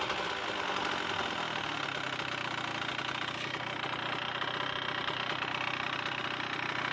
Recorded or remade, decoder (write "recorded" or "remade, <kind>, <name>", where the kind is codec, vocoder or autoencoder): recorded